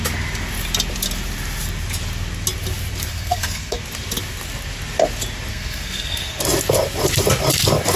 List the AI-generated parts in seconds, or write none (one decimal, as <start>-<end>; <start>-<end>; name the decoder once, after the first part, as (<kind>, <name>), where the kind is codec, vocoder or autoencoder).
3.1-3.8 (codec, SNAC); 5.5-6.4